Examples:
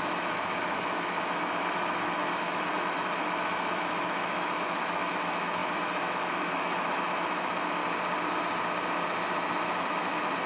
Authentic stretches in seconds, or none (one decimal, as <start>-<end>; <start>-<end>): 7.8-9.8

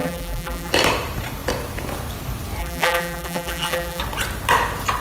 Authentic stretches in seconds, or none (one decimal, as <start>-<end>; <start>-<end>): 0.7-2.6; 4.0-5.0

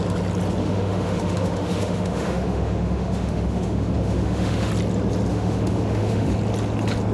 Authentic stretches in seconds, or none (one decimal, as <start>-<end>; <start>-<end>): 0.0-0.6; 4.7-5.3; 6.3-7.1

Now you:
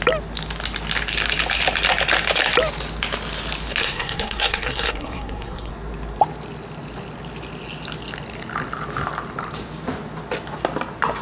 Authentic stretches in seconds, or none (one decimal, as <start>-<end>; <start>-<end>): 0.0-3.8; 5.7-11.2

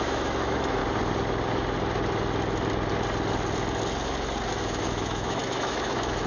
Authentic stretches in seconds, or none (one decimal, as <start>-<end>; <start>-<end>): 0.8-4.5

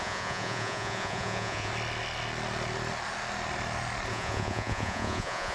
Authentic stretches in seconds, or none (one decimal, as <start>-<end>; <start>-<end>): 1.7-4.1

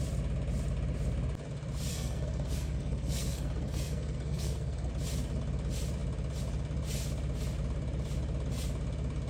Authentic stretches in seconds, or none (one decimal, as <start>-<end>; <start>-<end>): 0.0-1.9; 4.9-9.3

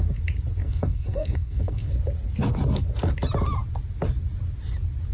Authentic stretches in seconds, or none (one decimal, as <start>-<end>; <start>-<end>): 0.0-0.6; 1.9-5.1